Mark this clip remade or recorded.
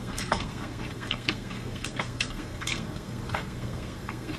remade